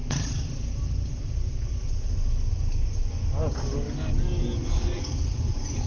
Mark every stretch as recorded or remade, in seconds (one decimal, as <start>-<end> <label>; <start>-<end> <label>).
0.0-5.9 recorded